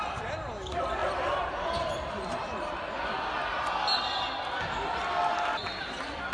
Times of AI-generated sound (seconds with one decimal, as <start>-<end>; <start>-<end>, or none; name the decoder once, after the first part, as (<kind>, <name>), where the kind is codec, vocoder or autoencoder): none